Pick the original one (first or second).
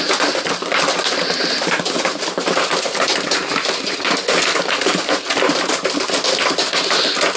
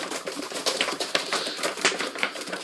first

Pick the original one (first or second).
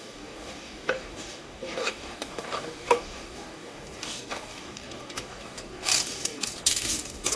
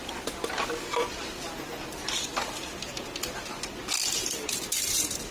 second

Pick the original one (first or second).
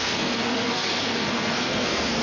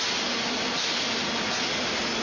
second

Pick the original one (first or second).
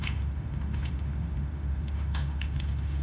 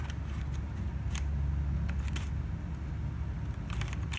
second